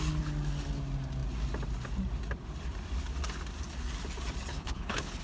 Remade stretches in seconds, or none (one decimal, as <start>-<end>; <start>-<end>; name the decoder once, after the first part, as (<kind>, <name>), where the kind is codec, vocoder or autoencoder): 4.5-5.2 (codec, HILCodec)